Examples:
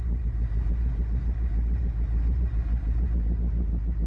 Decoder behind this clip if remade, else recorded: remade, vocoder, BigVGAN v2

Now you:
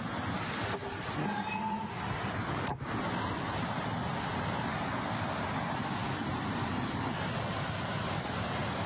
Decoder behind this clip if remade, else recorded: recorded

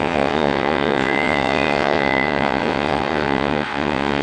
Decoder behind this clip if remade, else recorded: remade, vocoder, WaveNeXt